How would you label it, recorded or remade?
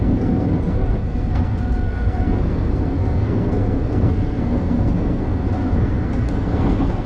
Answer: remade